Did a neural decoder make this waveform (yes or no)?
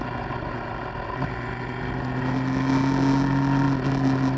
no